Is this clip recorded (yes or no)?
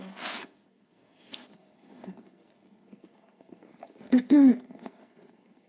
no